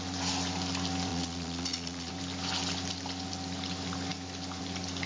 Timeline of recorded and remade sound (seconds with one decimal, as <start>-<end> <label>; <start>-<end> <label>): 0.0-1.1 recorded; 1.1-2.1 remade; 2.1-5.1 recorded